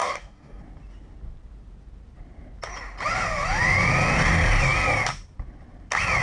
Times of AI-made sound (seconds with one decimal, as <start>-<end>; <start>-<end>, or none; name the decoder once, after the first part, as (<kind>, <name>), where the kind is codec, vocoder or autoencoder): 0.0-0.6 (codec, DAC)

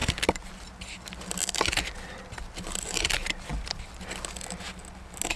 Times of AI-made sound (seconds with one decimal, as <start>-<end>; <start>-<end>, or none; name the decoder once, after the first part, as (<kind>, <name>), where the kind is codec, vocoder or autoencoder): none

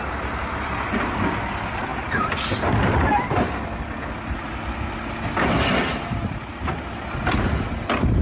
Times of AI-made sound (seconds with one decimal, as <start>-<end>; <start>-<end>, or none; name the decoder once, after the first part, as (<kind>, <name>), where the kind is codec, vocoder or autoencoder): none

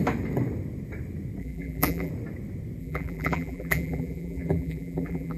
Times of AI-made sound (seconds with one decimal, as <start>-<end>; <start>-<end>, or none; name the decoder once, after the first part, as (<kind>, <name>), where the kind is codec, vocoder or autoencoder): 1.4-2.1 (vocoder, BigVGAN v2); 2.8-5.4

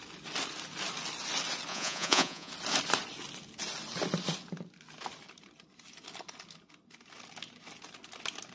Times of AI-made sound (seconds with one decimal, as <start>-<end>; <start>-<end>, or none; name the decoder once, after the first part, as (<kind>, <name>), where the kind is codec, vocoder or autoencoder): 1.7-2.5 (vocoder, Vocos)

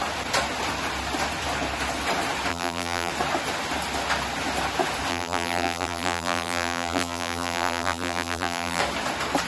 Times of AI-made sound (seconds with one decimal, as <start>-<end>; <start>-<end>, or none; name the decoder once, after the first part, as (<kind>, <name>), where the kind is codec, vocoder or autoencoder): 2.5-3.1 (vocoder, BigVGAN v2); 5.1-8.8